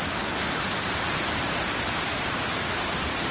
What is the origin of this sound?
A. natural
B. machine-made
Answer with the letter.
B